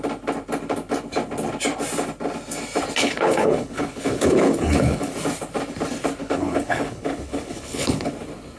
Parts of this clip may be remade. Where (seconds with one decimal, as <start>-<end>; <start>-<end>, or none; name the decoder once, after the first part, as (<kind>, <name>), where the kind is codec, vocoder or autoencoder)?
3.0-5.1 (codec, HILCodec); 6.2-8.1